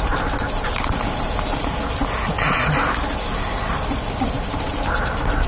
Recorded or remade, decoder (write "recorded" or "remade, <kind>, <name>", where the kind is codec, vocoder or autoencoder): recorded